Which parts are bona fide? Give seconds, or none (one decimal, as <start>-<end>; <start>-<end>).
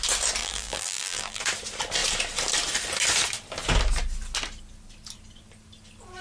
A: 0.0-0.4; 1.4-6.2